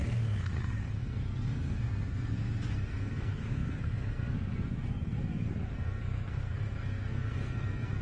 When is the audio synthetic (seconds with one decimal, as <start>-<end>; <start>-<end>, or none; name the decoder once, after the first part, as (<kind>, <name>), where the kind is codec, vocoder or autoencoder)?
0.0-8.0 (codec, SNAC)